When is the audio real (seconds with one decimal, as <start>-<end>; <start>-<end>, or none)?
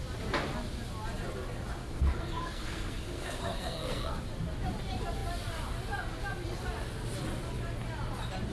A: 0.0-1.8; 4.2-8.5